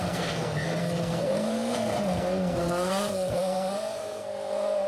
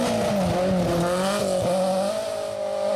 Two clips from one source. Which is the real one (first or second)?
second